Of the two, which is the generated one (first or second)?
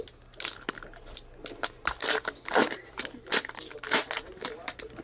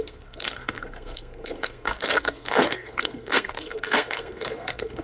second